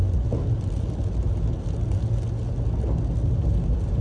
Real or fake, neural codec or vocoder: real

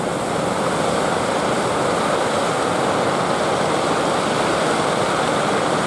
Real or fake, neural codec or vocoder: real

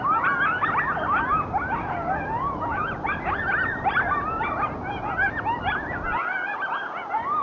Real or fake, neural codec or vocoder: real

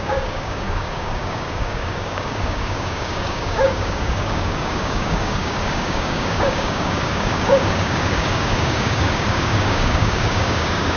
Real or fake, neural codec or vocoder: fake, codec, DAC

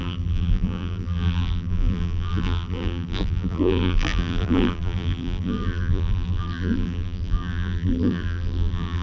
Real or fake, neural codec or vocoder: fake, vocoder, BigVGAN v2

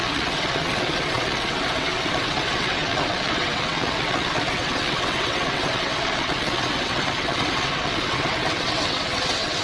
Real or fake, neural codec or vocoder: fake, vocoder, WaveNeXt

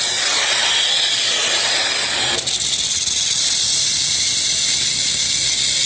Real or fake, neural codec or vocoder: real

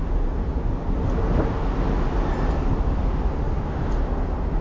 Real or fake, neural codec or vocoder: real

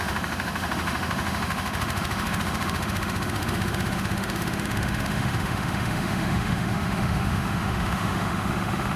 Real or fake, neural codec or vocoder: fake, autoencoder, DAC-VAE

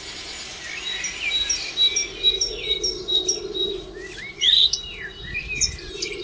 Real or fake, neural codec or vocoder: real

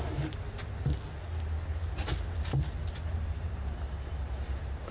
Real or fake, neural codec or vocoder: real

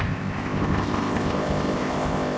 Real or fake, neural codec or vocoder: fake, codec, ZipCodec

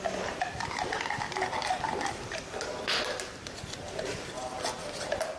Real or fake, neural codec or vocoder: real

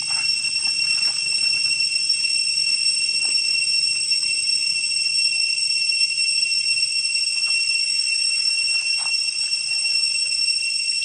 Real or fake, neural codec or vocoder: real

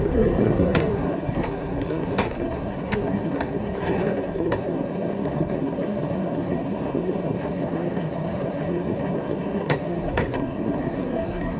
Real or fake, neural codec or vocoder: fake, codec, SNAC